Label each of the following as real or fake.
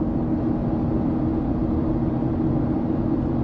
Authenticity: real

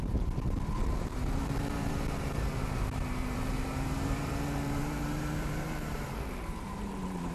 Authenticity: fake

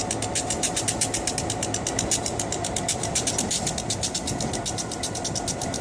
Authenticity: real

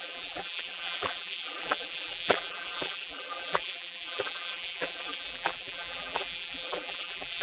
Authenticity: fake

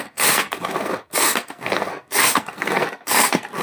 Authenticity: fake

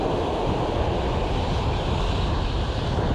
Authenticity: real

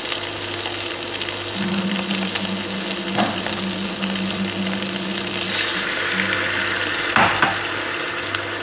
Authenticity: real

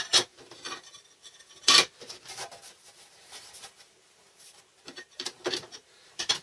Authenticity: fake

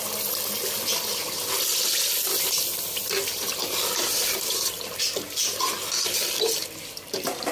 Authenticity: real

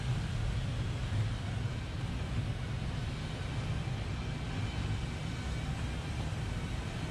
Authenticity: real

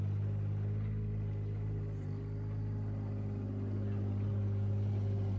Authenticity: real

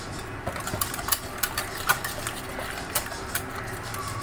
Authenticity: real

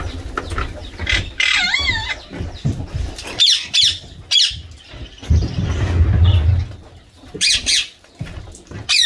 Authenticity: real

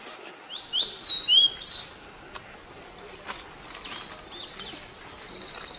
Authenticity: real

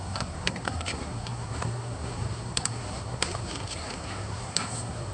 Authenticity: fake